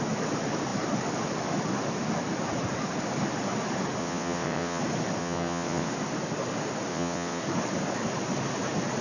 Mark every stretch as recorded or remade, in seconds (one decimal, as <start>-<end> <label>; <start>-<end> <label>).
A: 0.0-4.0 recorded; 4.0-4.8 remade; 4.8-5.2 recorded; 5.2-5.9 remade; 5.9-6.9 recorded; 6.9-7.4 remade; 7.4-9.0 recorded

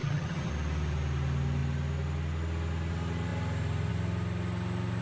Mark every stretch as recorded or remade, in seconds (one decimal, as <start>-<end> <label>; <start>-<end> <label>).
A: 0.0-0.5 remade; 0.5-5.0 recorded

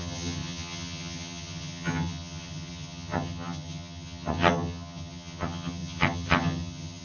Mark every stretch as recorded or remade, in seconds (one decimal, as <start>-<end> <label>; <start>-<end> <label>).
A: 0.0-7.0 remade